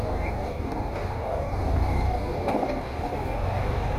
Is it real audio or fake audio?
fake